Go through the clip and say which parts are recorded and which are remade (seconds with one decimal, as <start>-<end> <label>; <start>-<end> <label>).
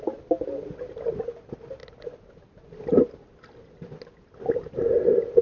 0.0-5.4 recorded